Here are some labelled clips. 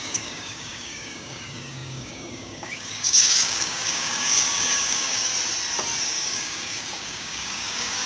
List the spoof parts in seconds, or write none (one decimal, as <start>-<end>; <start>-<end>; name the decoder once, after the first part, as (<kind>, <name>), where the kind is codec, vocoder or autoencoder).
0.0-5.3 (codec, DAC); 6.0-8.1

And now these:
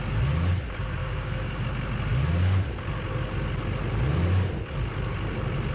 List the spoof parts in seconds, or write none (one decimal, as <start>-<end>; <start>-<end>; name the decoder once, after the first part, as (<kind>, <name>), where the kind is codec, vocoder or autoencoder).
1.0-1.6 (codec, DAC)

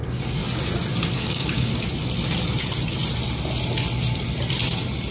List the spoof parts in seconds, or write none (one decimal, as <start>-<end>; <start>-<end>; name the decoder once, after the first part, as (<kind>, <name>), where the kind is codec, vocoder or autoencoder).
0.0-0.4 (codec, DAC); 1.1-1.7

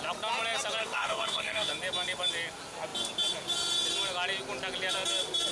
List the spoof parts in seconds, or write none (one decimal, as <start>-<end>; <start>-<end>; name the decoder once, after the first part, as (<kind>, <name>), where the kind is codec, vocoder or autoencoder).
0.8-1.7 (codec, DAC)

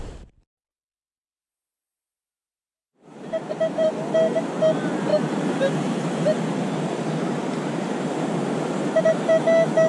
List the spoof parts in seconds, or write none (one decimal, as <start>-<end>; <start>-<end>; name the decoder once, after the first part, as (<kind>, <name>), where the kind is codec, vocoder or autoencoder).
none

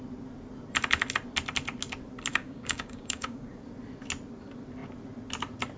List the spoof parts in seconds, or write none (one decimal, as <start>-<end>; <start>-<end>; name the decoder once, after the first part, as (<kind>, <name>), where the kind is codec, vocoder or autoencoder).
2.3-3.5 (codec, DAC)